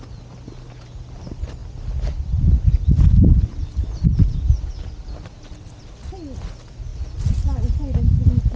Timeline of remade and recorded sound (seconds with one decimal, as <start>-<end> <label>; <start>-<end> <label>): 0.0-8.6 recorded